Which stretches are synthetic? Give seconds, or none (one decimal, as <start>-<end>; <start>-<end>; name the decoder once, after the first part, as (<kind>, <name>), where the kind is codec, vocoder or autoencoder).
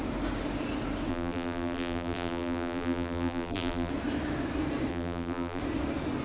1.1-3.9 (vocoder, BigVGAN v2); 4.9-5.6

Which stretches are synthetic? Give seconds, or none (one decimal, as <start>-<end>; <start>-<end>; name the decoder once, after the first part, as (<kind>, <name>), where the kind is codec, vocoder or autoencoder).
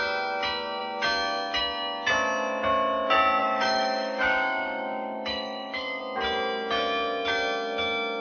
3.4-6.0 (autoencoder, DAC-VAE)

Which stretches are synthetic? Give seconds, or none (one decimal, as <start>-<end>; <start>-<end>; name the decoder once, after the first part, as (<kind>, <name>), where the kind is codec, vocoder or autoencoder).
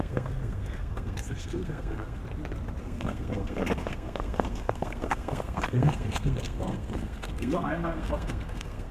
0.0-2.2 (codec, SNAC); 2.8-8.9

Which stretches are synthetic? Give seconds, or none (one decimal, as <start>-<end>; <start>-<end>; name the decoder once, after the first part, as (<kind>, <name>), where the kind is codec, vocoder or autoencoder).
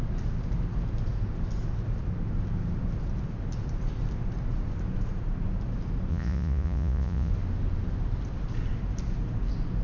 6.1-7.3 (vocoder, Vocos)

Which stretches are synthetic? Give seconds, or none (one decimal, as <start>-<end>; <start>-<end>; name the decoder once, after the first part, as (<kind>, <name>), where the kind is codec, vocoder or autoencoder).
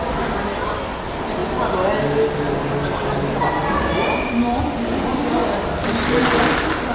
none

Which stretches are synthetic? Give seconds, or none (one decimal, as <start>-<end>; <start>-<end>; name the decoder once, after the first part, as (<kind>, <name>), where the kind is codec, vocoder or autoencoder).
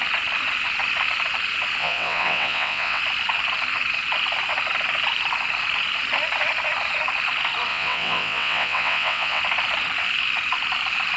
1.8-3.0 (vocoder, WaveNeXt); 7.7-9.4